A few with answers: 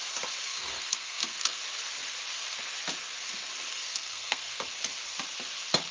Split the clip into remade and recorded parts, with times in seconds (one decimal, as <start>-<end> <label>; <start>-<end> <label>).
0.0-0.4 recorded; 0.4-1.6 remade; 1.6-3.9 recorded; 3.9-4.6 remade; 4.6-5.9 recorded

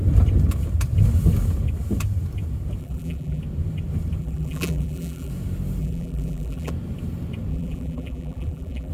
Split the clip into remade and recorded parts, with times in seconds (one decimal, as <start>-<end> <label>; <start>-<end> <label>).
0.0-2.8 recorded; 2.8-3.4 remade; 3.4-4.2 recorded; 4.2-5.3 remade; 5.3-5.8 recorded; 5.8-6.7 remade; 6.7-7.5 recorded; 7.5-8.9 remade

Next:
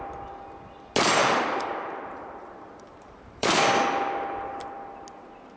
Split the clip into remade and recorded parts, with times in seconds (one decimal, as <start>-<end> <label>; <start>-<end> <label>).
0.0-1.2 recorded; 1.2-3.6 remade; 3.6-5.6 recorded

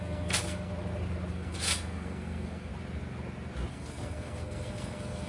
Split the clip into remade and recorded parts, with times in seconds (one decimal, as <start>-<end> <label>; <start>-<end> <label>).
0.0-0.7 remade; 0.7-1.3 recorded; 1.3-2.7 remade; 2.7-3.7 recorded; 3.7-5.3 remade